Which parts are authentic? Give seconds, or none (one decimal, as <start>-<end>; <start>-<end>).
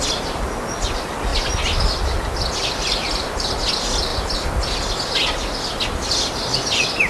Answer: 0.0-7.1